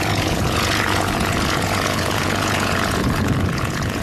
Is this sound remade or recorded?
remade